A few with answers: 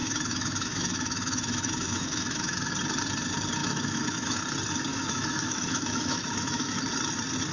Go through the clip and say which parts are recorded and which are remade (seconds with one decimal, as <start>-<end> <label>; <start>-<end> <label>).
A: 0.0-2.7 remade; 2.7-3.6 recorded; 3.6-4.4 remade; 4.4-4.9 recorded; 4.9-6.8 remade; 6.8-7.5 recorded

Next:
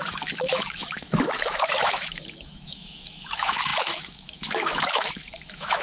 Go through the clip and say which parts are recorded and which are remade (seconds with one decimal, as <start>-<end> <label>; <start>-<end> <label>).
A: 0.0-5.8 remade

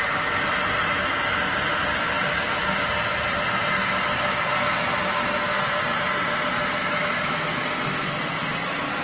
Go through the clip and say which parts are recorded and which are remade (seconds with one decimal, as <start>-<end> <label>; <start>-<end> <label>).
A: 0.0-6.8 recorded; 6.8-7.6 remade; 7.6-9.0 recorded